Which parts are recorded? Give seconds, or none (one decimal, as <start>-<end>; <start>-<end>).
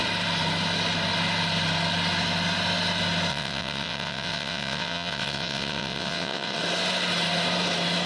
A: 0.0-3.3; 6.6-8.1